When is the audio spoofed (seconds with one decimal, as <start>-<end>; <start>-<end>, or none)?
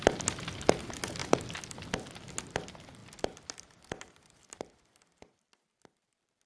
1.2-1.9; 3.0-5.2